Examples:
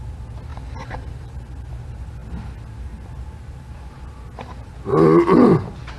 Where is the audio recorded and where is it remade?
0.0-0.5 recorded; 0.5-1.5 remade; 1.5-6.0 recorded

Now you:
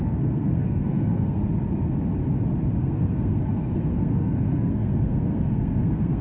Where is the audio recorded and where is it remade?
0.0-1.4 remade; 1.4-2.8 recorded; 2.8-6.2 remade

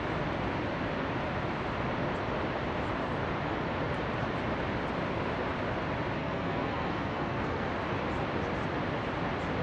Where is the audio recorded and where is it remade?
0.0-6.2 recorded; 6.2-7.7 remade; 7.7-9.6 recorded

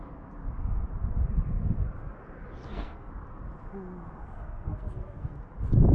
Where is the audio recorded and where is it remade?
0.0-2.6 recorded; 2.6-3.1 remade; 3.1-4.2 recorded; 4.2-5.4 remade; 5.4-5.9 recorded

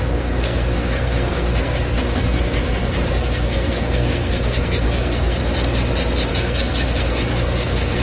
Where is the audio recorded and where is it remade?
0.0-5.4 remade; 5.4-6.3 recorded; 6.3-8.0 remade

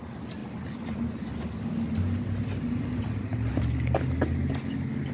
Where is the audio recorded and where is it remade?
0.0-5.1 recorded